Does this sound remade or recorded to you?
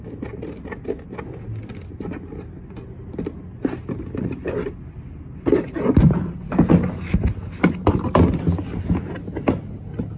recorded